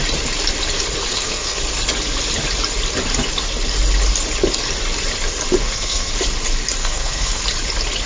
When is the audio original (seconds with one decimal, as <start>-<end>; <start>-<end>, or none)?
0.0-1.1; 1.6-5.6; 6.1-6.8; 7.4-8.1